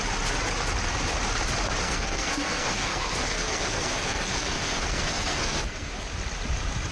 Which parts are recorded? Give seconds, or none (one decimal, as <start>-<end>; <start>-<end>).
0.0-1.8; 5.9-6.9